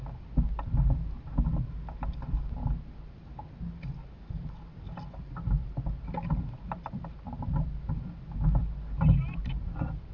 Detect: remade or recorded recorded